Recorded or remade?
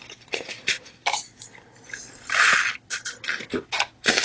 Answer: recorded